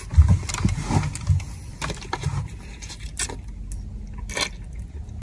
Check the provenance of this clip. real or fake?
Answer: real